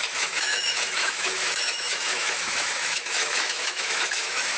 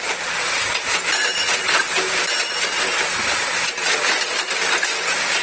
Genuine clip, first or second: second